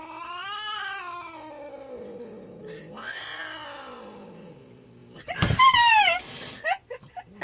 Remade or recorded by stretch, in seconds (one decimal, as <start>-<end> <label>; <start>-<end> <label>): 0.0-7.4 recorded